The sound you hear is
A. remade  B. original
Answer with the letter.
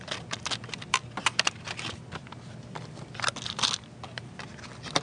B